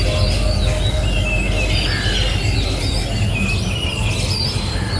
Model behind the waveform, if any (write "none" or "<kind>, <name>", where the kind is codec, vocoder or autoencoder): none